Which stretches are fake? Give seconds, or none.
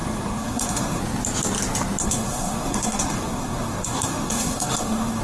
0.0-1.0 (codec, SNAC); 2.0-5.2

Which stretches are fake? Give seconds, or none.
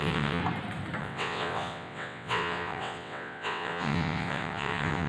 0.0-0.4 (vocoder, WaveNeXt); 1.0-5.1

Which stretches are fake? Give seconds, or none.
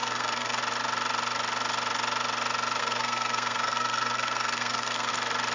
0.0-0.6 (codec, SNAC); 2.8-5.1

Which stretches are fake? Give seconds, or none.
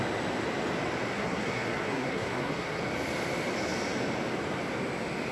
1.1-2.8 (codec, SNAC)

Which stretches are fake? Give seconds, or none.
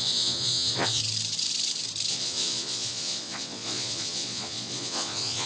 0.0-1.0 (vocoder, Vocos); 2.1-5.5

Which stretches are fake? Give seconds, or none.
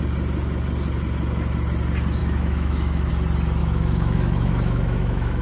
2.2-3.1 (autoencoder, DAC-VAE); 3.6-5.4